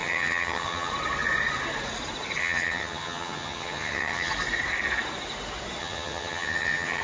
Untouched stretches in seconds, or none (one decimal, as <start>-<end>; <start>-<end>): 0.9-2.4; 4.3-5.8